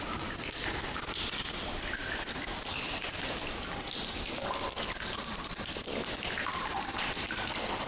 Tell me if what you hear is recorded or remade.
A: recorded